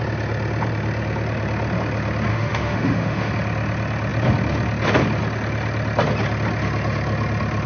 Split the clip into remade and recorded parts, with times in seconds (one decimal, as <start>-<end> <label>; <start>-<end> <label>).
0.0-2.3 recorded; 2.3-3.3 remade; 3.3-7.7 recorded